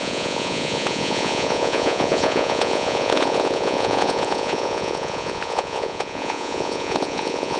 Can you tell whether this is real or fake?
fake